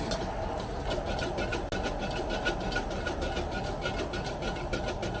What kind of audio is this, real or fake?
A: real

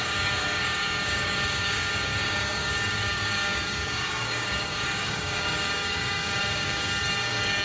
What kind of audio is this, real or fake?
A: fake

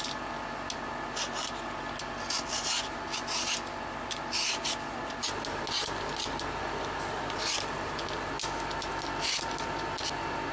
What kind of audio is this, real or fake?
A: real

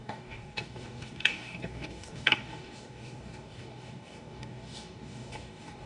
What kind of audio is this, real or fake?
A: fake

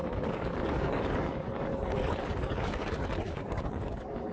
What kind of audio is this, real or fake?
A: fake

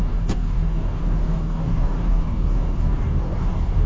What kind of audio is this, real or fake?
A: fake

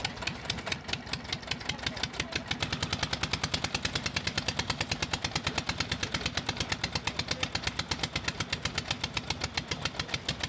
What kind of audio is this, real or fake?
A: real